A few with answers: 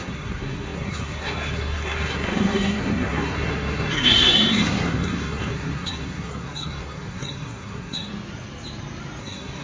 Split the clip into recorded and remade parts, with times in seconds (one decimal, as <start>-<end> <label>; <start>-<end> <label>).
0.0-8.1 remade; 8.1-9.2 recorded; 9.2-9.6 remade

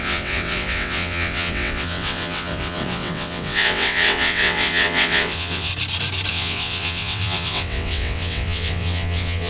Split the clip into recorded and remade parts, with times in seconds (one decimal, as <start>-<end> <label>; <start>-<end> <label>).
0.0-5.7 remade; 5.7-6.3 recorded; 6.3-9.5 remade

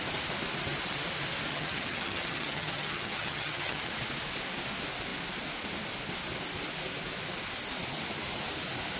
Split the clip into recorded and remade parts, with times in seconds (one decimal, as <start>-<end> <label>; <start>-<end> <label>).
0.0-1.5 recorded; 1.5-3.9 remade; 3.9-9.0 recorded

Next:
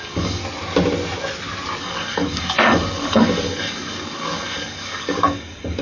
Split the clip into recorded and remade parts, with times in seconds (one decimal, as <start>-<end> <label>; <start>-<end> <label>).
0.0-0.4 remade; 0.4-1.8 recorded; 1.8-5.8 remade

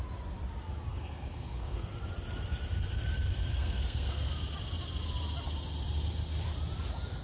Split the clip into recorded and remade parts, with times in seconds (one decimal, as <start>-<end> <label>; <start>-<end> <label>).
0.0-0.9 recorded; 0.9-1.9 remade; 1.9-3.5 recorded; 3.5-4.3 remade; 4.3-7.2 recorded

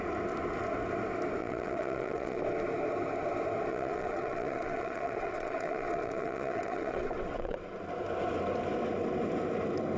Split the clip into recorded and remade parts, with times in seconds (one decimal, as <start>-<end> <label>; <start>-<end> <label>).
0.0-1.4 recorded; 1.4-2.4 remade; 2.4-3.7 recorded; 3.7-7.6 remade; 7.6-10.0 recorded